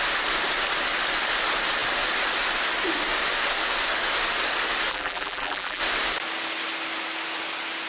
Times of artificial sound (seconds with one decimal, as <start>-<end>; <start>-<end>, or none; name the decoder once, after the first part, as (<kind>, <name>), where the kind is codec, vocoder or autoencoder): 4.9-5.8 (vocoder, BigVGAN v2)